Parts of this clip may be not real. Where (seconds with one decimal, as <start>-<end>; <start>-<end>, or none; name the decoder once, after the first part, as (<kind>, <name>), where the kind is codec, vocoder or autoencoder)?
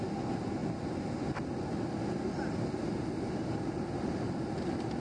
none